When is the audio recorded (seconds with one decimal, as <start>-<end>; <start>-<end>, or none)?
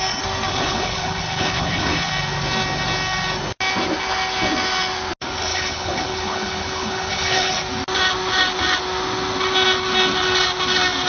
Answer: 0.0-0.5; 2.1-5.5; 7.5-11.1